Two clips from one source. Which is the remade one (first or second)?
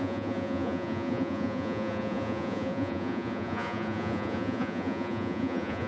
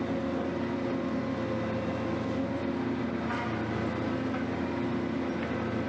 first